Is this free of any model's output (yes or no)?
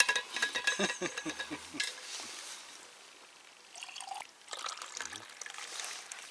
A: yes